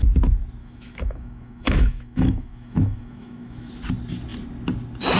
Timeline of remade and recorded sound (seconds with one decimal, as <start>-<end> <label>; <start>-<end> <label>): 0.0-0.6 recorded; 0.6-3.7 remade; 3.7-5.2 recorded